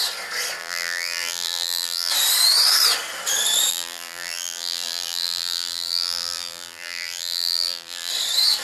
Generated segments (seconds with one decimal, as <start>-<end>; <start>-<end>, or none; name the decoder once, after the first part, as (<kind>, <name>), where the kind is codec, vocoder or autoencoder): 0.6-2.1 (vocoder, BigVGAN v2); 3.7-8.1

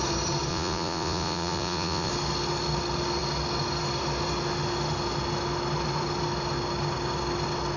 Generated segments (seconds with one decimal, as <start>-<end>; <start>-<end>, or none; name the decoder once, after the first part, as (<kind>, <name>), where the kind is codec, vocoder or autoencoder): 0.5-2.1 (vocoder, Vocos)

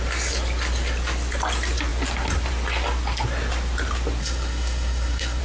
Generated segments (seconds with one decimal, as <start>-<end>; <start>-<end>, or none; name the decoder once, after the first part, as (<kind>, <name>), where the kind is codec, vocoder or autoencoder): 4.2-5.4 (codec, SNAC)